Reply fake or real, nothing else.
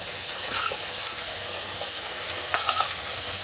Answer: fake